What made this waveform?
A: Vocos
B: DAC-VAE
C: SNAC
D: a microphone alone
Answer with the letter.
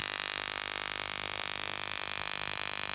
D